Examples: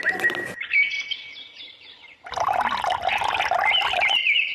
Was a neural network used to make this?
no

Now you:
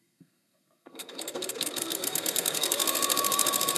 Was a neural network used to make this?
yes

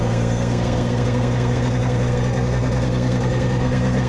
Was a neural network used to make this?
yes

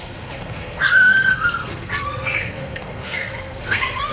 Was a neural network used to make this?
yes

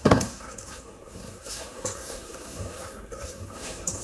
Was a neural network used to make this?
yes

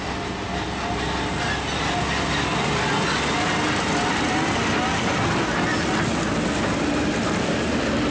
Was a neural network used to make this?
no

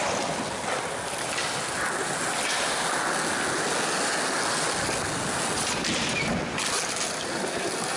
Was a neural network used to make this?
no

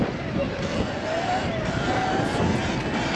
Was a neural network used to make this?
no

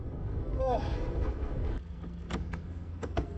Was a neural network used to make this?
yes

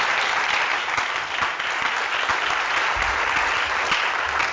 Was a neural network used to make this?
no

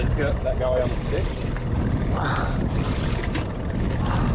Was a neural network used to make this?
no